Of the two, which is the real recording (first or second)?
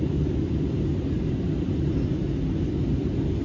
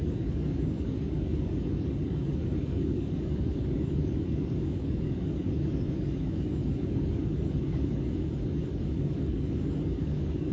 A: first